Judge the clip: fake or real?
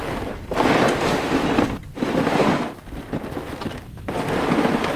real